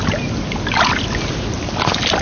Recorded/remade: recorded